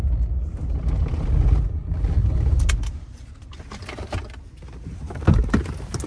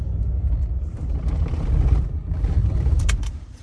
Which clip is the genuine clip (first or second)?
first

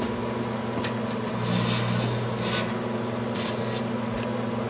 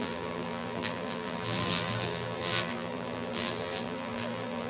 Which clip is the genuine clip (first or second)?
first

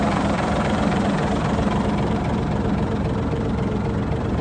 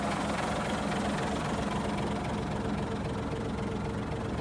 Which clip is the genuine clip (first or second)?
second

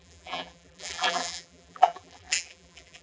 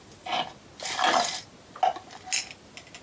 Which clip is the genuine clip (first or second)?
second